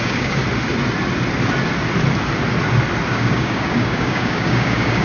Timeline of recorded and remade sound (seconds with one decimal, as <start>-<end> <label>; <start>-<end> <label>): 0.0-0.4 remade; 0.4-3.1 recorded; 3.1-5.0 remade